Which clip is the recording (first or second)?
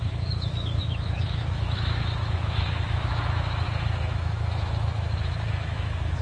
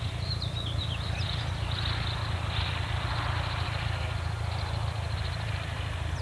second